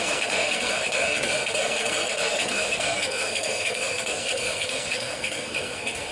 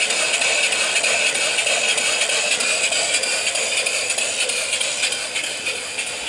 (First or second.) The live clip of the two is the second